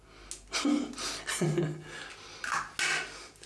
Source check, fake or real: real